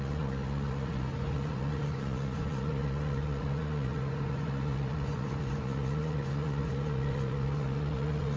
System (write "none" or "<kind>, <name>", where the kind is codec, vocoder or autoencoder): vocoder, Vocos